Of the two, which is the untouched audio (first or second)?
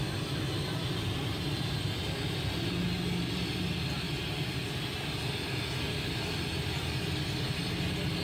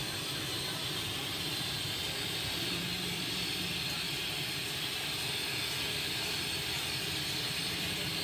first